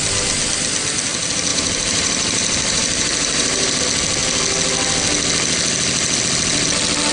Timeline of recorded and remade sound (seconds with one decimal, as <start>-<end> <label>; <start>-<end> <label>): 0.0-1.5 recorded; 1.5-3.8 remade; 3.8-7.1 recorded